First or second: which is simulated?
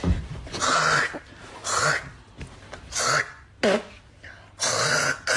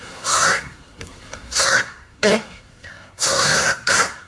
second